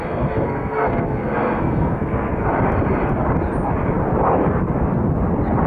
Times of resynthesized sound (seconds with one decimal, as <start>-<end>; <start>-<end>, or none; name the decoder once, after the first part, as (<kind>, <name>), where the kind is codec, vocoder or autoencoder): 0.0-2.3 (codec, SNAC)